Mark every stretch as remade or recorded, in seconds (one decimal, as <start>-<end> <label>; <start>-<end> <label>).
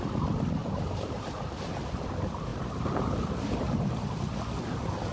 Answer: 0.0-0.6 recorded; 0.6-1.5 remade; 1.5-2.5 recorded; 2.5-4.4 remade; 4.4-5.1 recorded